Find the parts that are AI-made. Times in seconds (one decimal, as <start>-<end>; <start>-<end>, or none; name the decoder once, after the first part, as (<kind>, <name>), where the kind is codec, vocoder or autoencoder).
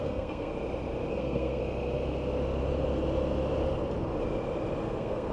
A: 0.0-0.5 (codec, SNAC); 1.1-1.6; 4.8-5.3